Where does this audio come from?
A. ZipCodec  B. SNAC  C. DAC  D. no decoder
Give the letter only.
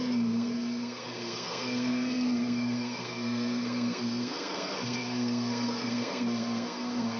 B